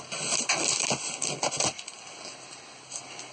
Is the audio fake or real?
real